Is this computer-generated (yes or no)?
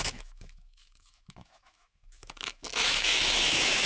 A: yes